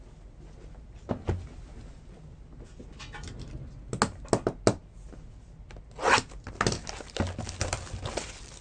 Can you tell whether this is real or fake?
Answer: real